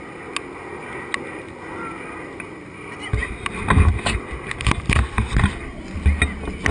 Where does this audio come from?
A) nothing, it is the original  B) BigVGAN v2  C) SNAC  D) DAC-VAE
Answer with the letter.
A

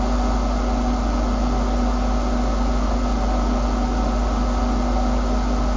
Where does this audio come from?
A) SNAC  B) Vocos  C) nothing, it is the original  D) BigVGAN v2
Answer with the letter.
C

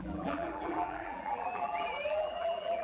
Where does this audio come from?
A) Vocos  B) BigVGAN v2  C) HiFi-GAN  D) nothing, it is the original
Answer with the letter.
B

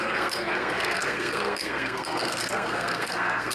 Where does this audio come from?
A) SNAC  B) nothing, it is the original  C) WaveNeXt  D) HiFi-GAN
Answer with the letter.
A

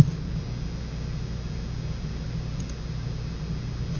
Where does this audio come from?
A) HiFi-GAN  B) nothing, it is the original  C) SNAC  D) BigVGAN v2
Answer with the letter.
B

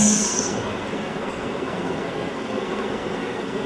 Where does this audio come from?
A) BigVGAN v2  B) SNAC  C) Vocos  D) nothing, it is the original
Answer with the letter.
B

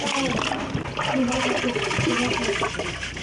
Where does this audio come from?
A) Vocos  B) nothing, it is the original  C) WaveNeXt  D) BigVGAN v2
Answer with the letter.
B